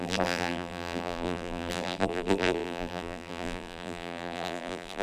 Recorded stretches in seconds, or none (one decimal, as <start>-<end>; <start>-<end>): none